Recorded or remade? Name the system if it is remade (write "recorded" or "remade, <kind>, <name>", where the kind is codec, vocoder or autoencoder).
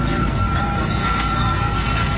remade, codec, SNAC